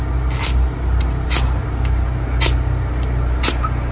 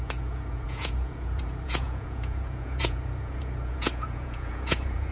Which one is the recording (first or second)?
first